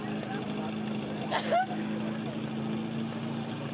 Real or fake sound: real